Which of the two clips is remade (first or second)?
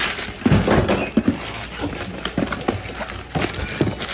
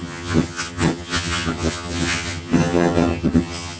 second